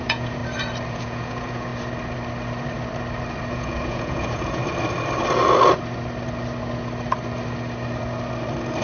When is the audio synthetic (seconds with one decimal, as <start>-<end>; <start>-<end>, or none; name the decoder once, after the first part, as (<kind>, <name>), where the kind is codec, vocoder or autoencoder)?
0.0-0.4 (vocoder, Vocos); 0.9-1.7; 3.5-4.6